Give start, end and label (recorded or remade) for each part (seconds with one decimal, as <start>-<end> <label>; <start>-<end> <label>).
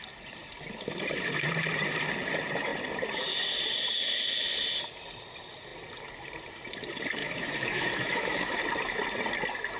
0.0-7.2 recorded; 7.2-8.6 remade; 8.6-9.8 recorded